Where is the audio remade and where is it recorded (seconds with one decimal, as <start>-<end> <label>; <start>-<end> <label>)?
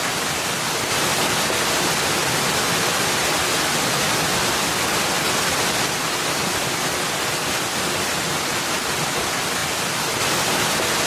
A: 0.0-11.1 recorded